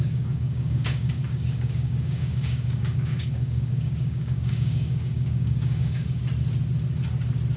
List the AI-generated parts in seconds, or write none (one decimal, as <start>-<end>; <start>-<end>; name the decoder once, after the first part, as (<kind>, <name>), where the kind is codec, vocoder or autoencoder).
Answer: 0.0-6.2 (codec, DAC)